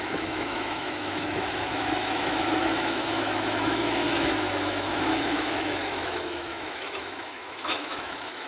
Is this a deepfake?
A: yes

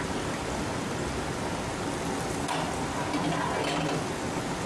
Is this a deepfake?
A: no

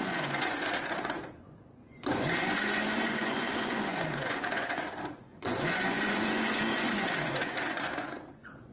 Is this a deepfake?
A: yes